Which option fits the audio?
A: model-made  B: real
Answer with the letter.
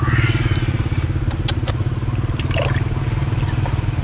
B